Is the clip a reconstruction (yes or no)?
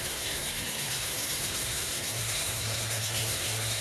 yes